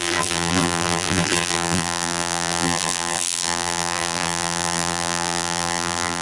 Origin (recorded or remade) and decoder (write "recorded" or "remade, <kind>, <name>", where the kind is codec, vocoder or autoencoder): remade, vocoder, BigVGAN v2